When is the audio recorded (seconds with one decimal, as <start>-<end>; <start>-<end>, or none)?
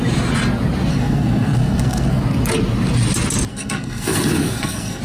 0.0-0.9; 2.2-3.5